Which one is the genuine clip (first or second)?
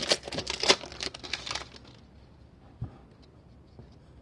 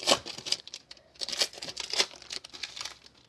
first